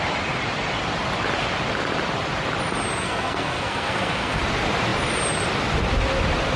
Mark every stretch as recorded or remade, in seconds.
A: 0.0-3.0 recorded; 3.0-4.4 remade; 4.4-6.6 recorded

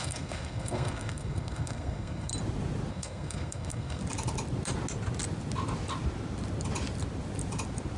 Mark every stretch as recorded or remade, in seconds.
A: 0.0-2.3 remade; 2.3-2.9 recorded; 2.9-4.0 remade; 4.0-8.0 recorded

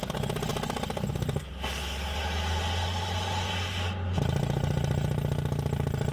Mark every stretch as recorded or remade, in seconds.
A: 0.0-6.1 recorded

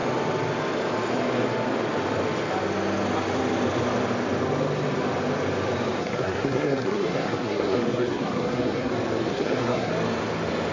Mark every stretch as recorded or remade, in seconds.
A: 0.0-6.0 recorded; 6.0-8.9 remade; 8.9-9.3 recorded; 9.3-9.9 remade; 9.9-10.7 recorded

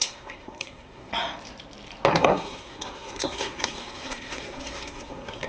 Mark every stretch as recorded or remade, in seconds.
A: 0.0-1.1 remade; 1.1-2.1 recorded; 2.1-5.5 remade

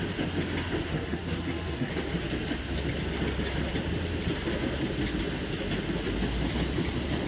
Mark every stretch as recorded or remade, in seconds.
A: 0.0-0.8 recorded; 0.8-1.9 remade; 1.9-7.3 recorded